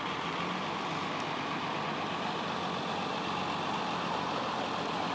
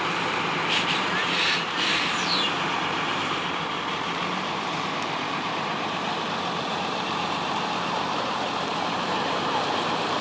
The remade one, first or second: second